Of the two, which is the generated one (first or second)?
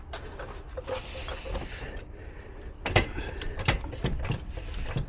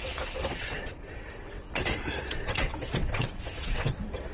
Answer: second